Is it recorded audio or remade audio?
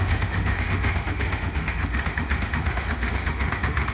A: remade